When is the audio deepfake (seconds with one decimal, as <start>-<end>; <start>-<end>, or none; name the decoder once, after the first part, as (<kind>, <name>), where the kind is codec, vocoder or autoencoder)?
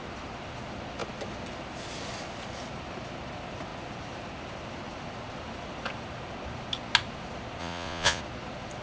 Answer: 7.6-8.2 (vocoder, Vocos)